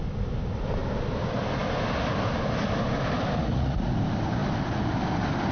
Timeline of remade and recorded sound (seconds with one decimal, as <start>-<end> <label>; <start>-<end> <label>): 0.0-3.4 recorded; 3.4-3.9 remade; 3.9-5.5 recorded